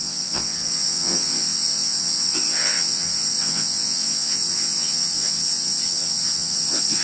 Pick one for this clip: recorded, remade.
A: remade